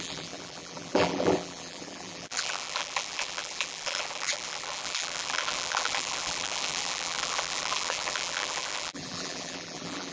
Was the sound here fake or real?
fake